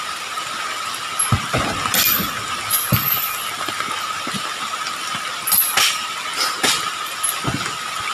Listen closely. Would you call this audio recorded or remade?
recorded